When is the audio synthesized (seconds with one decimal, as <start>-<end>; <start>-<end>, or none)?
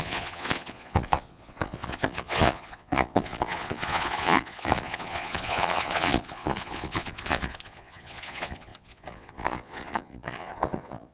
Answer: 0.0-11.1